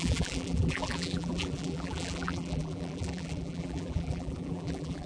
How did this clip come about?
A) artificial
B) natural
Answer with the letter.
A